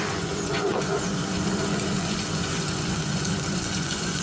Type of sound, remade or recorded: remade